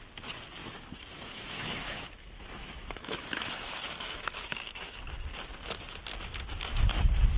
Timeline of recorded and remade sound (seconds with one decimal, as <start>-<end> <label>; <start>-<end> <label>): 0.0-0.6 recorded; 0.6-5.0 remade; 5.0-7.4 recorded